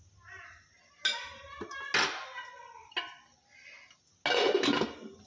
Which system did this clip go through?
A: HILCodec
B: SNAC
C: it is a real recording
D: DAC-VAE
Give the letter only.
C